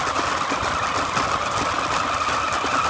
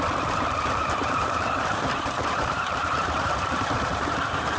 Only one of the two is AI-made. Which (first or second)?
second